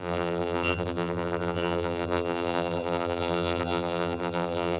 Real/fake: fake